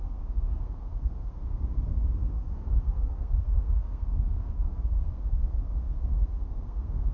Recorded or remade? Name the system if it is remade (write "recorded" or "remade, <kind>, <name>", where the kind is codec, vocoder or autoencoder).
remade, codec, SNAC